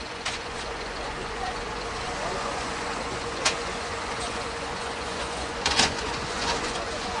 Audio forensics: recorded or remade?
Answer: remade